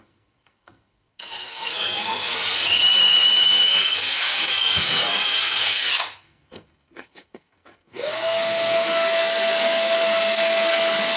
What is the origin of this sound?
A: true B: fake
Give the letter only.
B